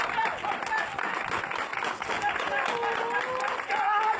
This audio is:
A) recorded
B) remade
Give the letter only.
A